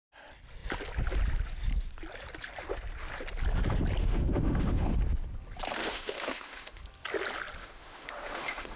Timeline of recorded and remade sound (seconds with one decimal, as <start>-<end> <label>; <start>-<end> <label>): 0.0-4.0 recorded; 4.0-5.0 remade; 5.0-5.8 recorded; 5.8-6.8 remade; 6.8-7.6 recorded; 7.6-8.8 remade